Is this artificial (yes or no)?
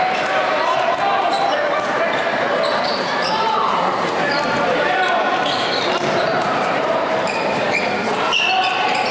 yes